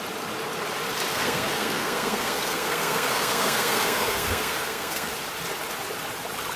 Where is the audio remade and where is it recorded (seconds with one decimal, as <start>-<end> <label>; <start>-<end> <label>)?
0.0-1.1 recorded; 1.1-5.1 remade; 5.1-6.6 recorded